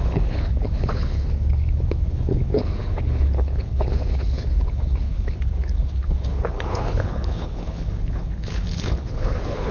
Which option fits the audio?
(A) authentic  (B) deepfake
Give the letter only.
B